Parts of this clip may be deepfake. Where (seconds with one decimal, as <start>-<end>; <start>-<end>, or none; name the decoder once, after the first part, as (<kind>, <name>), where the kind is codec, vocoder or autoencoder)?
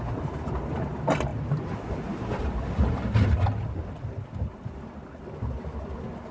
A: none